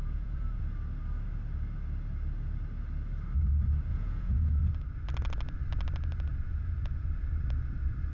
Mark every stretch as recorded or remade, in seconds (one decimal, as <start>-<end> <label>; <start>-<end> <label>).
0.0-0.6 remade; 0.6-3.9 recorded; 3.9-4.6 remade; 4.6-6.3 recorded; 6.3-7.1 remade; 7.1-8.1 recorded